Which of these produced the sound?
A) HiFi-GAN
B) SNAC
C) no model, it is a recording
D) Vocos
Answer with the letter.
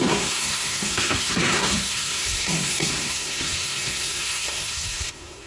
B